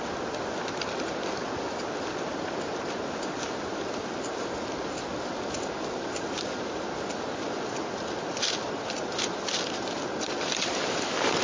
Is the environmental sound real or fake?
real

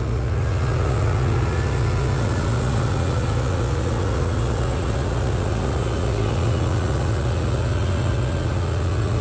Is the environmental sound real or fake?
fake